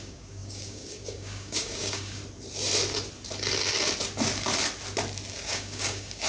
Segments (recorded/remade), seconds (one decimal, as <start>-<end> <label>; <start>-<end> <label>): 0.0-2.2 remade; 2.2-5.3 recorded; 5.3-6.3 remade